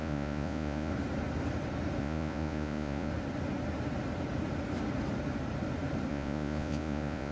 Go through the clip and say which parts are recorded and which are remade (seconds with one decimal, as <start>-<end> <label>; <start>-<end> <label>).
0.0-0.9 remade; 0.9-2.0 recorded; 2.0-3.1 remade; 3.1-6.1 recorded; 6.1-7.3 remade